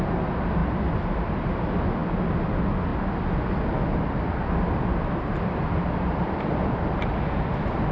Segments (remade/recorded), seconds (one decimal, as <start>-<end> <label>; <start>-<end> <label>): 0.0-7.9 recorded

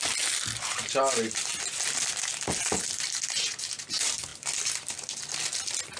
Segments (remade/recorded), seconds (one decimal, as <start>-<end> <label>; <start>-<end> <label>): 0.0-6.0 recorded

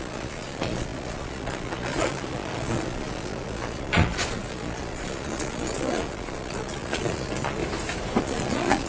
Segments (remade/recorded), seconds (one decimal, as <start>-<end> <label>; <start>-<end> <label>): 0.0-7.6 remade; 7.6-8.2 recorded; 8.2-8.9 remade

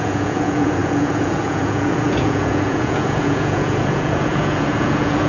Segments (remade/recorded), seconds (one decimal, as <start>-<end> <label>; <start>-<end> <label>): 0.0-5.3 remade

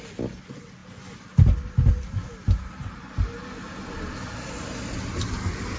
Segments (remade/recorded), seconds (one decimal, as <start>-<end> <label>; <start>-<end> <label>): 0.0-5.8 recorded

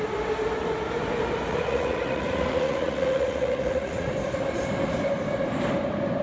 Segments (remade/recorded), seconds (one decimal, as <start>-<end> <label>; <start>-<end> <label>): 0.0-1.5 recorded; 1.5-4.1 remade; 4.1-6.2 recorded

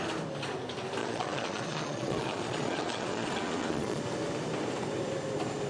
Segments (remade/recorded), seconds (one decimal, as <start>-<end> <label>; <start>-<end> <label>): 0.0-1.0 recorded; 1.0-4.0 remade; 4.0-5.7 recorded